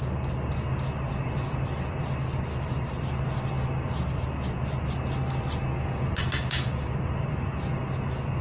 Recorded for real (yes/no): yes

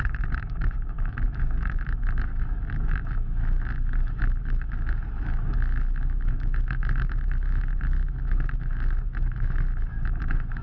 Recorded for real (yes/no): no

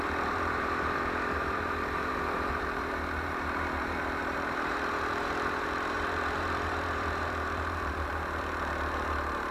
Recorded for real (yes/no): no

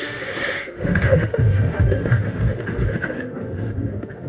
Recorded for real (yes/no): no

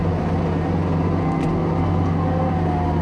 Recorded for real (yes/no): yes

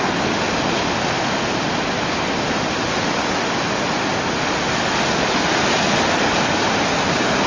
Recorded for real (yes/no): yes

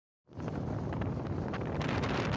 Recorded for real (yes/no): yes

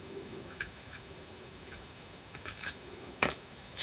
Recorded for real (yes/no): no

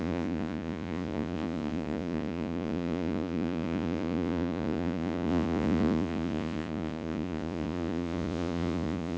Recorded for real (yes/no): no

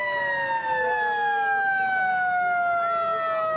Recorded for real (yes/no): yes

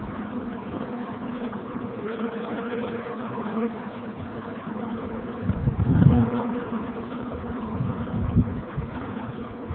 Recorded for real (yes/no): no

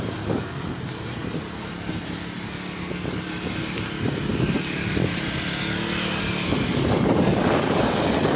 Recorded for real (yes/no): yes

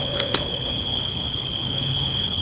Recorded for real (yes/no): no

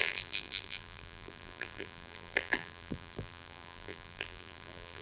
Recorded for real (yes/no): no